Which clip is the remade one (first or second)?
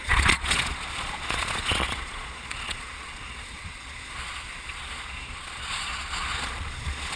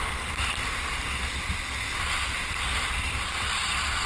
first